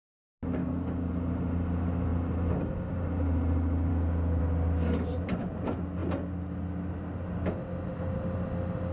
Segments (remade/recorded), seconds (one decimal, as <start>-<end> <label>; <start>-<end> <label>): 0.0-0.6 recorded; 0.6-1.1 remade; 1.1-3.9 recorded; 3.9-4.4 remade; 4.4-8.9 recorded